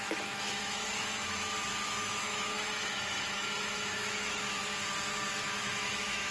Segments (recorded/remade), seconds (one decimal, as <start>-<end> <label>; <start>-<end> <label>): 0.0-1.5 remade; 1.5-2.0 recorded; 2.0-4.6 remade; 4.6-5.3 recorded; 5.3-6.3 remade